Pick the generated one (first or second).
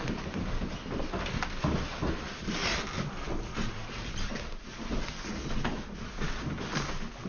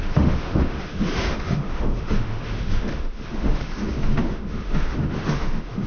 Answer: second